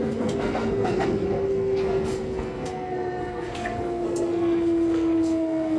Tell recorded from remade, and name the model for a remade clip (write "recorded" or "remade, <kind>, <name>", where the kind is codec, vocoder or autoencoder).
remade, codec, SNAC